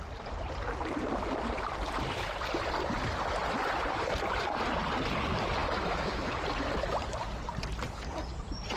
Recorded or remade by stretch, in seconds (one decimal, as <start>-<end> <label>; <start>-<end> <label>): 0.0-5.6 recorded; 5.6-6.3 remade; 6.3-8.8 recorded